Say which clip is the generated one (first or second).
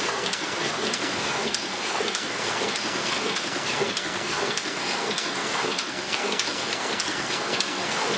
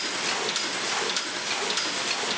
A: first